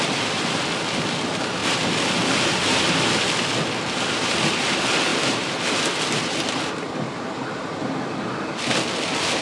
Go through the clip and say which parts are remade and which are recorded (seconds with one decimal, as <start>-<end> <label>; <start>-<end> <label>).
0.0-9.4 recorded